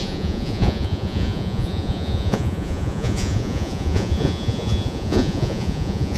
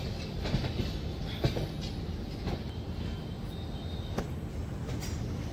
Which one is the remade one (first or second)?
first